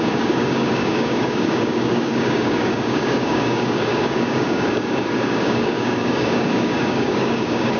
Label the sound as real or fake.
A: fake